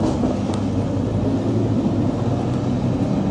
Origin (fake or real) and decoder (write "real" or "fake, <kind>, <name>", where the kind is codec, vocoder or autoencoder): real